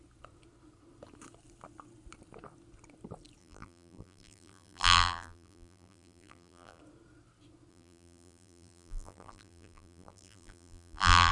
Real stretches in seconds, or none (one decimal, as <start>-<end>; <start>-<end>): 0.0-3.4; 6.8-7.7